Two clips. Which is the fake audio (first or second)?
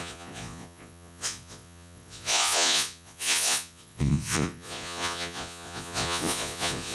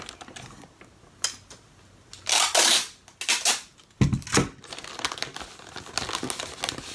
first